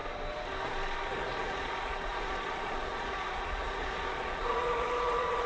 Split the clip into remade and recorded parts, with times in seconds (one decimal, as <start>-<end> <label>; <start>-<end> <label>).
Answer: 0.0-1.2 recorded; 1.2-5.5 remade